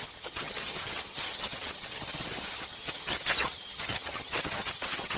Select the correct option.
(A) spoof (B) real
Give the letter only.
A